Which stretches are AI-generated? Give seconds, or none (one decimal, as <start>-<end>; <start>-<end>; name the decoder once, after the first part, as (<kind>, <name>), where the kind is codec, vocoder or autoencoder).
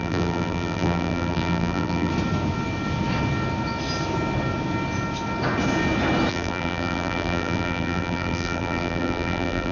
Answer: 0.0-2.1 (vocoder, BigVGAN v2); 6.3-9.7